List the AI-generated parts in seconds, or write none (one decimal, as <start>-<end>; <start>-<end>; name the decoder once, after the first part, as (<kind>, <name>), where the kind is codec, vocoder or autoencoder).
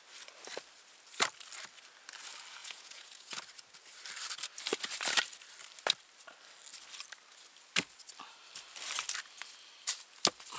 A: 2.6-3.4 (vocoder, Vocos)